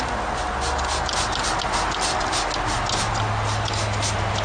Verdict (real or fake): real